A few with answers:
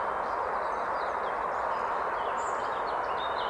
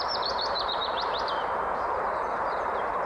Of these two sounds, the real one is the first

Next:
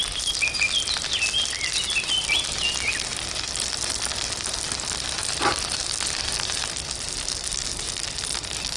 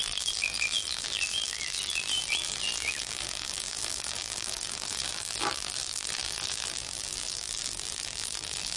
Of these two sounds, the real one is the first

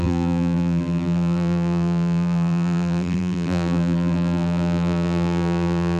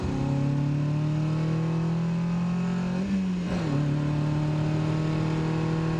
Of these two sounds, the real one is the second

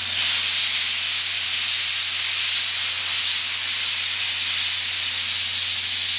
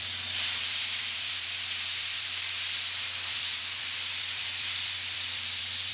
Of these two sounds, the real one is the first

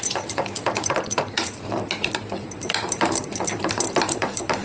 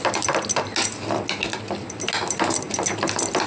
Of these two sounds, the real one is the second